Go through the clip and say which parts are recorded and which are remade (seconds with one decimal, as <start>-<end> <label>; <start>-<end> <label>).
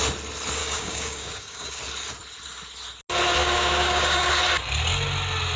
0.0-0.6 recorded; 0.6-1.8 remade; 1.8-3.4 recorded; 3.4-4.3 remade; 4.3-5.6 recorded